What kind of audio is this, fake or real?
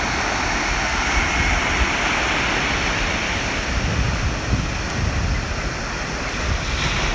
real